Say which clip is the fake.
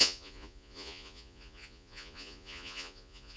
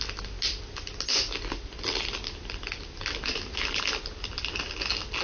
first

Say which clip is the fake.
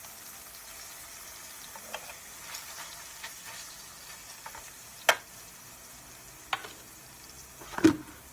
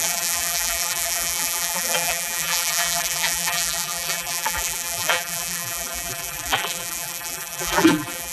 second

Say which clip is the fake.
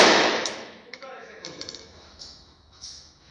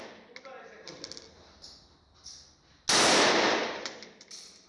first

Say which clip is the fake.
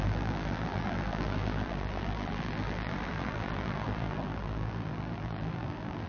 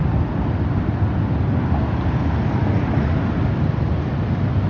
first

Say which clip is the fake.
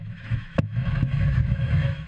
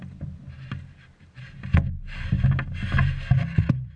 first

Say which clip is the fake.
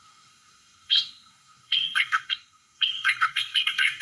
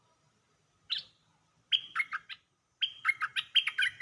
first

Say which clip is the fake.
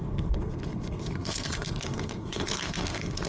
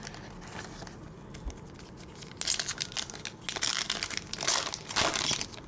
first